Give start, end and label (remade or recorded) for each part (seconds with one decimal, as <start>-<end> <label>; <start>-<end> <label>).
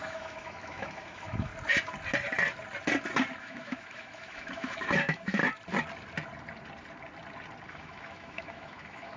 0.0-1.5 remade; 1.5-3.4 recorded; 3.4-5.4 remade; 5.4-7.7 recorded; 7.7-9.2 remade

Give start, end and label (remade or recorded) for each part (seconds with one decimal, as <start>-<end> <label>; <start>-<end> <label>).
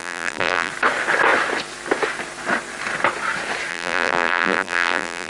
0.0-0.7 remade; 0.7-3.7 recorded; 3.7-5.3 remade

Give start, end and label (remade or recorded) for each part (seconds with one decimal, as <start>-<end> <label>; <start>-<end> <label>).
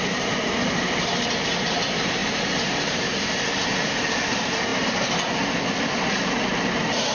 0.0-7.1 remade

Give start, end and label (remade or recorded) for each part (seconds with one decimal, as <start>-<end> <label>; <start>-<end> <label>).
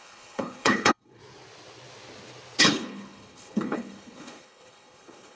0.0-1.2 remade; 1.2-2.6 recorded; 2.6-5.4 remade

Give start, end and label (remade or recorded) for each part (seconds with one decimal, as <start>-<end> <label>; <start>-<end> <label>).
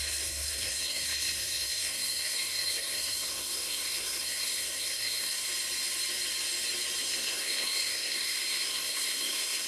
0.0-5.5 remade; 5.5-7.0 recorded; 7.0-9.7 remade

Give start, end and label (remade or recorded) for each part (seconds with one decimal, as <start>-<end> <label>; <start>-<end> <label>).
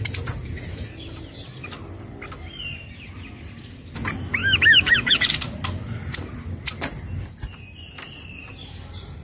0.0-4.4 recorded; 4.4-5.3 remade; 5.3-9.2 recorded